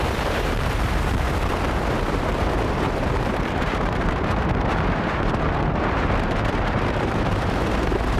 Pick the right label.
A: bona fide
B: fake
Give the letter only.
B